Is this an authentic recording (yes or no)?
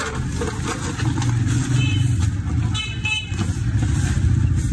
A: yes